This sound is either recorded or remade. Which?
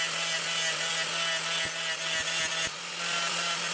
recorded